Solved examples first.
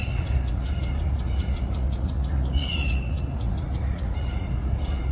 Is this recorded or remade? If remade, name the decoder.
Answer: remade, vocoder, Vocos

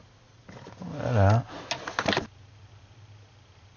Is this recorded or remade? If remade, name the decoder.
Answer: recorded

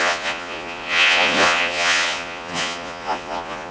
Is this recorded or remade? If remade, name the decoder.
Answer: remade, vocoder, Vocos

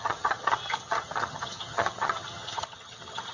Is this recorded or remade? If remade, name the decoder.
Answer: remade, vocoder, HiFi-GAN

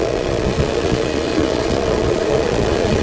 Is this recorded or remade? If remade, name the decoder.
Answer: remade, vocoder, Vocos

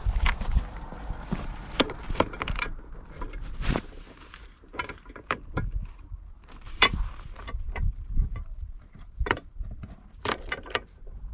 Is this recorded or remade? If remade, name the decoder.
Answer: remade, vocoder, BigVGAN v2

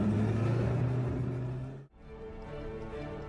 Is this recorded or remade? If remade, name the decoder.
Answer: recorded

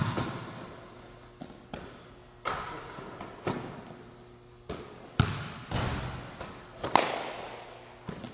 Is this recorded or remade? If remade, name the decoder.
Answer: recorded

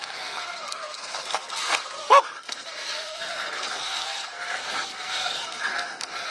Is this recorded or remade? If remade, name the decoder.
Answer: remade, codec, SNAC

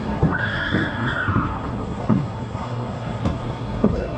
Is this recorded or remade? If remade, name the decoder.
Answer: remade, codec, SNAC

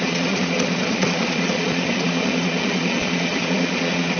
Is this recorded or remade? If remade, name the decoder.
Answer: remade, vocoder, Vocos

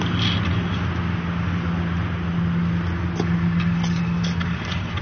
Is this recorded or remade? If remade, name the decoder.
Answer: recorded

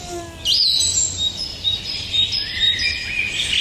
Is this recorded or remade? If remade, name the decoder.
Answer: recorded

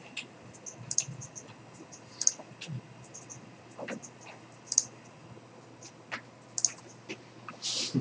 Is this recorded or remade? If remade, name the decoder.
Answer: recorded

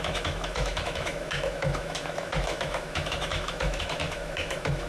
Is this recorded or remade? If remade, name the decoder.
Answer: remade, autoencoder, DAC-VAE